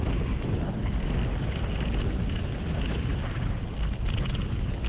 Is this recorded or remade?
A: recorded